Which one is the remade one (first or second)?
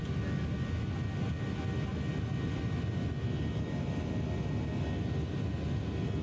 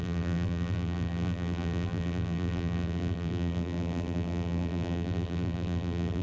second